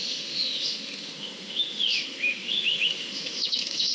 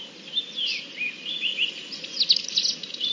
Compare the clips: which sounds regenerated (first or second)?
first